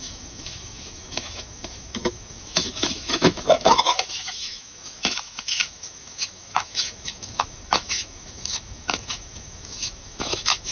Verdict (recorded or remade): remade